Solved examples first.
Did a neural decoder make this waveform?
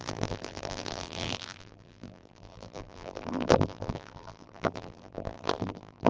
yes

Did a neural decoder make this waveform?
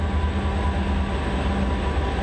no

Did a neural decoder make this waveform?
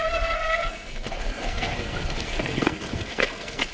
yes